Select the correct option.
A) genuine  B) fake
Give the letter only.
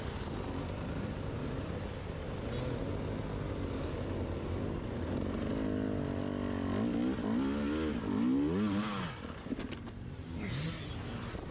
A